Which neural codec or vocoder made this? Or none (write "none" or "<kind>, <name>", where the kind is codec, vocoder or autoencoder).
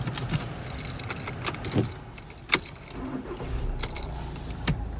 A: none